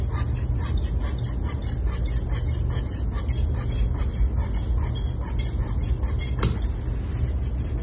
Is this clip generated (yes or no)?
no